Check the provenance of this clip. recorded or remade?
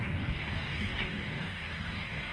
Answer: remade